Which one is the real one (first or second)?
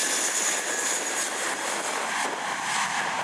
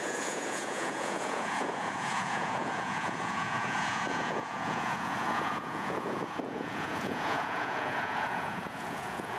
first